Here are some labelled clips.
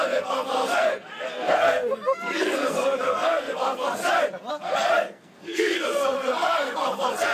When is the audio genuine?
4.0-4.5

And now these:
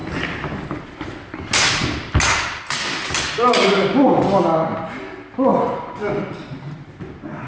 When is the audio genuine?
0.0-7.5

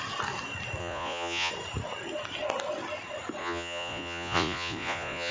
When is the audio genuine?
0.0-0.8; 1.5-3.4

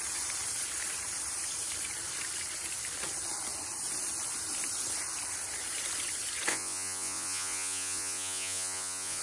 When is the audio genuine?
0.0-6.5

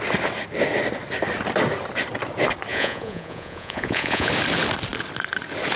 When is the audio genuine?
0.0-2.7; 4.3-5.8